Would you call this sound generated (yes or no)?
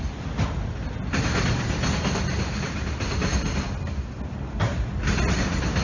no